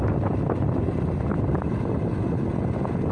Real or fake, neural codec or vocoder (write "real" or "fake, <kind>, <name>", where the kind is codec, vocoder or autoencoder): real